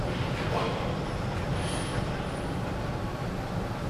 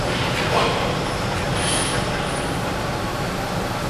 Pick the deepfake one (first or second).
first